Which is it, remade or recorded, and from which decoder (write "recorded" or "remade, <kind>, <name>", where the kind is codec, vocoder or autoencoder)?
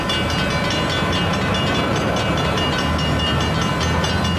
recorded